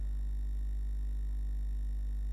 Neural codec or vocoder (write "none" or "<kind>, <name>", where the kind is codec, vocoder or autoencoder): none